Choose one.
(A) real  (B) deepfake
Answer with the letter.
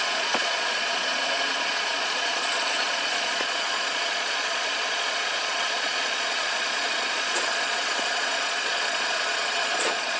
B